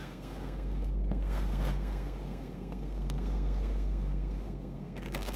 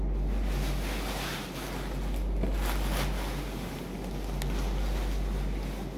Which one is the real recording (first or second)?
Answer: second